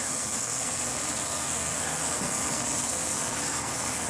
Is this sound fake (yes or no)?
yes